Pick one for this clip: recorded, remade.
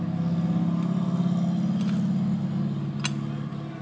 recorded